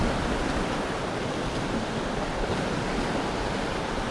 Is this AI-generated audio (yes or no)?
no